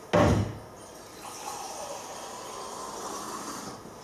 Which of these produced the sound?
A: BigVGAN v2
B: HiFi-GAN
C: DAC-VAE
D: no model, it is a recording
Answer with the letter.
D